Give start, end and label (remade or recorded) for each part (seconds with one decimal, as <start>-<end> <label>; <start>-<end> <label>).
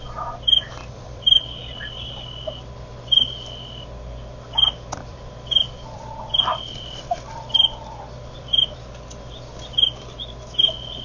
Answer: 0.0-0.8 recorded; 0.8-1.4 remade; 1.4-5.1 recorded; 5.1-8.8 remade; 8.8-11.0 recorded